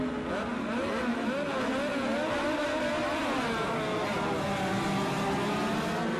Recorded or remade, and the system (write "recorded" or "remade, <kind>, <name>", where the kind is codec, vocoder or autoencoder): recorded